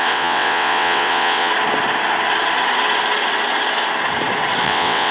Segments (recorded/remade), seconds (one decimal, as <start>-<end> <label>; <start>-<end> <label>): 0.0-1.5 remade; 1.5-4.6 recorded; 4.6-5.1 remade